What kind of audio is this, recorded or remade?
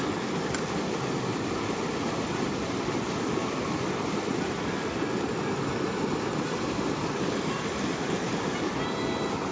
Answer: recorded